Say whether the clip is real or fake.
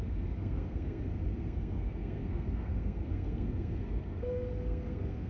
fake